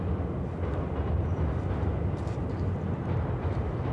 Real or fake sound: real